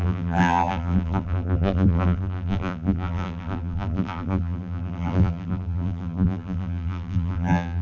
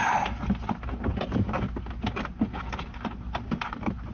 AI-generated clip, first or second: first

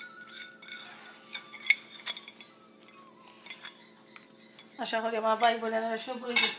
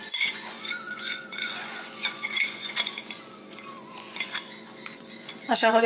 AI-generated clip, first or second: second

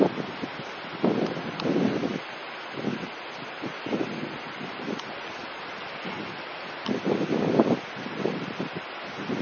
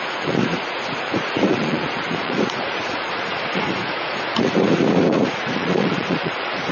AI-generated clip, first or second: second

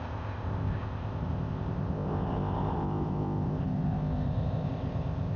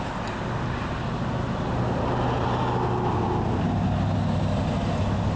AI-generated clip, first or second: first